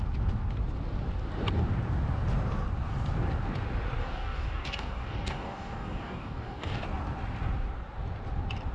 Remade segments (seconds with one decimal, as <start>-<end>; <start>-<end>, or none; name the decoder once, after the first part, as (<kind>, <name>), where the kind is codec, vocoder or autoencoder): 4.0-6.8 (codec, DAC)